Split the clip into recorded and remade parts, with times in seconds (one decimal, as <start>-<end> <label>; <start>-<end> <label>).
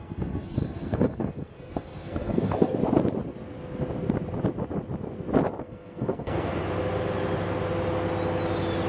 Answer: 0.0-2.8 remade; 2.8-5.6 recorded; 5.6-6.5 remade; 6.5-8.9 recorded